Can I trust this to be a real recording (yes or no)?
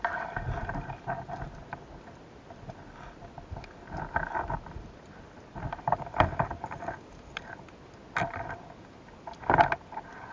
yes